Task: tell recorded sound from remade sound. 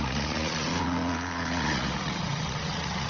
remade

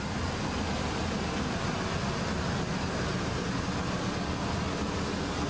recorded